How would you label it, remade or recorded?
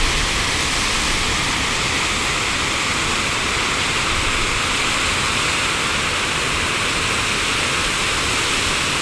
recorded